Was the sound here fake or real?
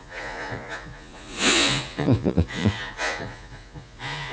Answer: fake